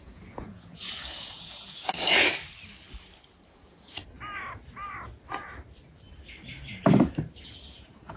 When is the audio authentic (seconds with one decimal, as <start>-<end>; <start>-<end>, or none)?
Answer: 2.3-3.5; 4.0-7.4

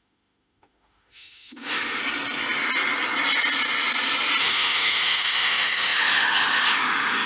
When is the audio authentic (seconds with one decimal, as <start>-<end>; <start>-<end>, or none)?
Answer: 2.0-4.4

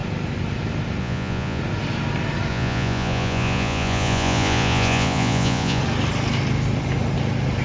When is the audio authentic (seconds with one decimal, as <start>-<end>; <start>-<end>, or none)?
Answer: 0.0-1.0; 1.6-2.5; 5.8-7.6

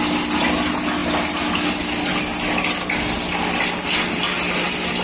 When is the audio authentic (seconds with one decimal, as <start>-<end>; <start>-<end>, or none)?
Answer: 0.0-5.0

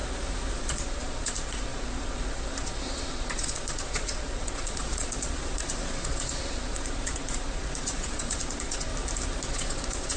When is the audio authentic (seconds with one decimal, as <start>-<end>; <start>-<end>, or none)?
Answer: 0.0-0.6; 8.9-9.5

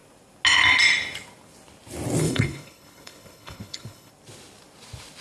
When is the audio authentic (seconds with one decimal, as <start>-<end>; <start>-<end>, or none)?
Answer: 0.0-2.2; 4.1-5.2

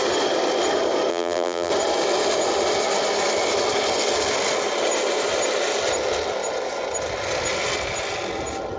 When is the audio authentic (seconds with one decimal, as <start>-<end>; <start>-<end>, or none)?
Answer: 0.0-1.1; 1.7-8.8